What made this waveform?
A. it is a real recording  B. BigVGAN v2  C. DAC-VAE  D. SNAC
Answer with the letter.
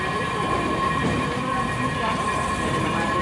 B